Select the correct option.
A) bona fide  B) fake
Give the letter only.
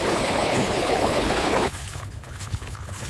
B